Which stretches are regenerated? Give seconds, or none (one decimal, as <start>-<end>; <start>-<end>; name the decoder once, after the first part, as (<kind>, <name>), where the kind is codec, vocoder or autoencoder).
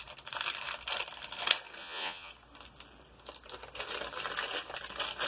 1.8-2.3 (vocoder, Vocos)